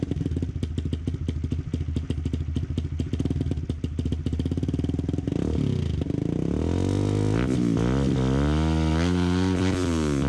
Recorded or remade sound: recorded